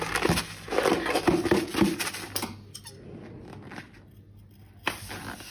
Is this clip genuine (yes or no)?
yes